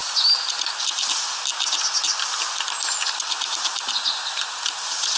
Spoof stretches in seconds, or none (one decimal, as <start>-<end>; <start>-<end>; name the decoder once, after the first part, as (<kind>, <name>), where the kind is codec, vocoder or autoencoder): 4.2-4.8 (vocoder, BigVGAN v2)